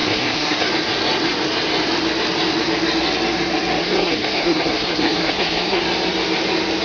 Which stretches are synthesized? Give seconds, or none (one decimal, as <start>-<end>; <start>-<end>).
0.0-0.7; 3.8-5.8